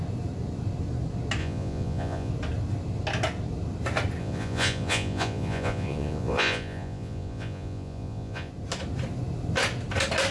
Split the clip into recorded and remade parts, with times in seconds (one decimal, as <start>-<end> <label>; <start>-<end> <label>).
0.0-1.4 recorded; 1.4-2.3 remade; 2.3-4.2 recorded; 4.2-8.5 remade; 8.5-10.3 recorded